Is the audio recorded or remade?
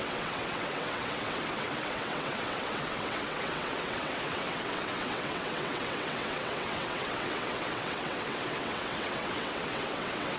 remade